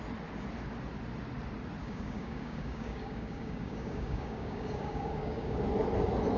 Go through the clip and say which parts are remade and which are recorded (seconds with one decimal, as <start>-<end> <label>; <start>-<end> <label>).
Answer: 0.0-1.8 recorded; 1.8-5.6 remade; 5.6-6.4 recorded